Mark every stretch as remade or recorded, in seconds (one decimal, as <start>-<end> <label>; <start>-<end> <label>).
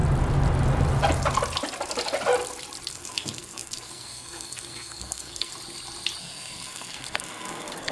0.0-2.9 recorded; 2.9-5.5 remade; 5.5-6.2 recorded; 6.2-7.9 remade